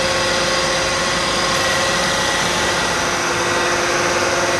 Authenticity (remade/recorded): recorded